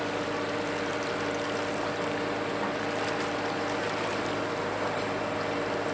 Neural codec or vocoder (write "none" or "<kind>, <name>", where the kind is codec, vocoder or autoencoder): none